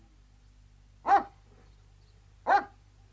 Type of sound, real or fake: real